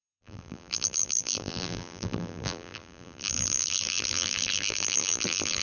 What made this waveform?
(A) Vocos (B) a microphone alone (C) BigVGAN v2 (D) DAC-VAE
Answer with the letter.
C